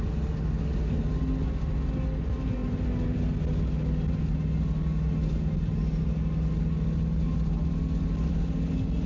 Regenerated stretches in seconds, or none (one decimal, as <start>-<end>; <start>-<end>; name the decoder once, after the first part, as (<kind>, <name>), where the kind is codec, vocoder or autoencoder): none